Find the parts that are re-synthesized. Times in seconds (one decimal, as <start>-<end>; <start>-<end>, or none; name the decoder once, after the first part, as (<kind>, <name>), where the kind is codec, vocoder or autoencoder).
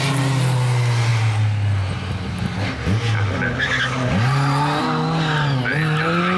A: none